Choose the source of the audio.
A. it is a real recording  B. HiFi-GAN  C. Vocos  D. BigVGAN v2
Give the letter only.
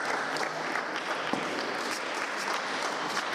A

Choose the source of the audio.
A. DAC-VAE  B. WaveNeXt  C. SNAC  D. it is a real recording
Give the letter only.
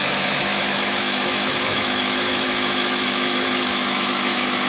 A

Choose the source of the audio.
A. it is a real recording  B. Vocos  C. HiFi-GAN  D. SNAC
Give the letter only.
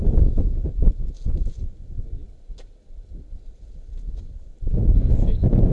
A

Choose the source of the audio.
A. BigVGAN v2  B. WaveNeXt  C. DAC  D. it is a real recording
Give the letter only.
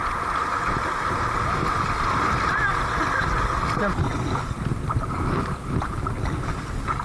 D